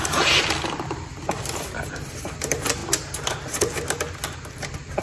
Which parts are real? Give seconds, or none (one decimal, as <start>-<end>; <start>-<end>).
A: 2.8-5.0